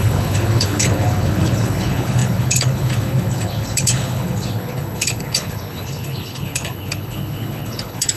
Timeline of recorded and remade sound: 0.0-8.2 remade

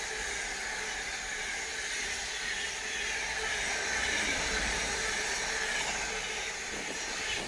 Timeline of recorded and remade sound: 0.0-7.5 recorded

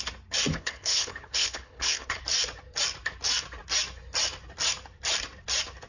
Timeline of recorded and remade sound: 0.0-0.5 recorded; 0.5-2.2 remade; 2.2-5.9 recorded

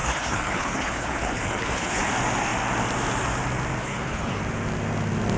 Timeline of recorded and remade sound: 0.0-2.1 remade; 2.1-3.8 recorded; 3.8-4.4 remade; 4.4-5.4 recorded

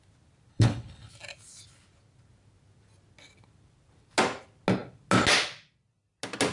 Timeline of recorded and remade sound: 0.0-0.5 recorded; 0.5-1.1 remade; 1.1-6.5 recorded

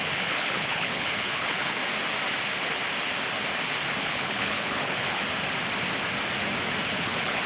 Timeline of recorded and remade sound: 0.0-1.8 remade; 1.8-2.4 recorded; 2.4-2.8 remade; 2.8-4.0 recorded; 4.0-5.2 remade; 5.2-6.9 recorded; 6.9-7.5 remade